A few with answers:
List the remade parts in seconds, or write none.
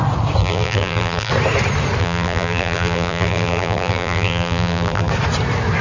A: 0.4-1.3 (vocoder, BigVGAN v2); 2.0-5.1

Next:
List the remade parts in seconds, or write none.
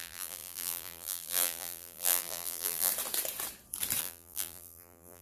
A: 0.0-2.9 (vocoder, BigVGAN v2); 4.0-5.2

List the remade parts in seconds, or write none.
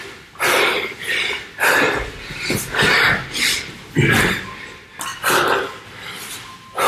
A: none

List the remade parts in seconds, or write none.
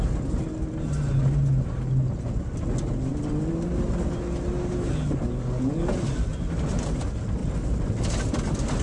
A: none